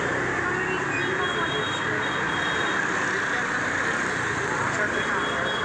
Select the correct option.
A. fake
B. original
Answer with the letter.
B